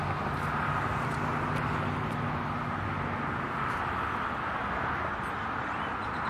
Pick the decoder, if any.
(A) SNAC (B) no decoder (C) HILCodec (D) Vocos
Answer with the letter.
B